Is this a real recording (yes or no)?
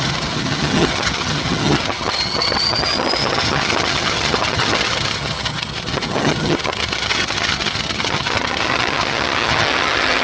no